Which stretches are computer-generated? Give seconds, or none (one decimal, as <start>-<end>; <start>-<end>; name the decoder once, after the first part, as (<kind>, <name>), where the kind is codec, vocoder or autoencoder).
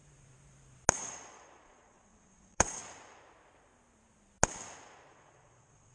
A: 0.9-2.8 (vocoder, Vocos); 5.1-5.9